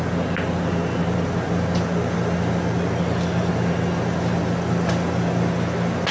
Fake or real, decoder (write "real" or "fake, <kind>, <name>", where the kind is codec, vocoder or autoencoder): real